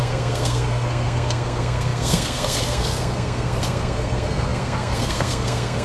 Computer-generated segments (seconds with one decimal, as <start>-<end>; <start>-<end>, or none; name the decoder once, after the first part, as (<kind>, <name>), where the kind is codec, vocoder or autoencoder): 0.0-5.8 (codec, SNAC)